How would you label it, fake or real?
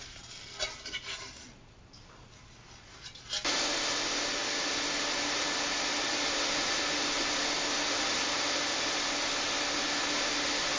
real